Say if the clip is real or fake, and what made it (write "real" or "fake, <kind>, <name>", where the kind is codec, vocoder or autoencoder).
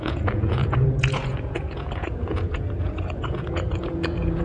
fake, vocoder, Vocos